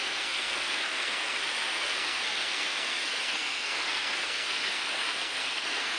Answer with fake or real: fake